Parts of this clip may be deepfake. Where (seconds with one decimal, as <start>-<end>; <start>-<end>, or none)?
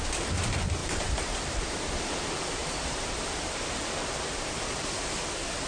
0.8-1.9; 2.6-5.3